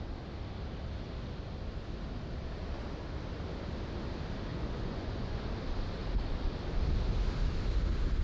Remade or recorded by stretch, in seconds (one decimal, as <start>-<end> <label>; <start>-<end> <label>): 0.0-4.5 recorded; 4.5-5.5 remade; 5.5-8.2 recorded